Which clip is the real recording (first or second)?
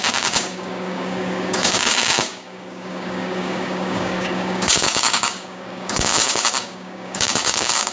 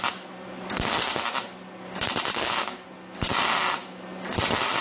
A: second